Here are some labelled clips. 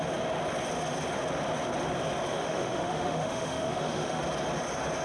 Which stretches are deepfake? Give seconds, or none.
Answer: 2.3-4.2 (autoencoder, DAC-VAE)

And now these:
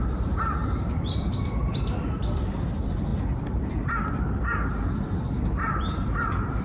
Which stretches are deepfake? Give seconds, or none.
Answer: 0.0-6.6 (vocoder, BigVGAN v2)

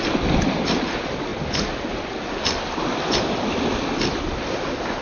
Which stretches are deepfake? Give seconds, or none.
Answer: none

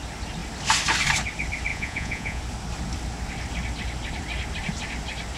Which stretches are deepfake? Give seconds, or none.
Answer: 1.7-2.4 (vocoder, Vocos)